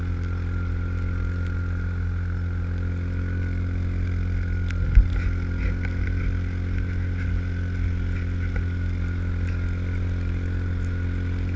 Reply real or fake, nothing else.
real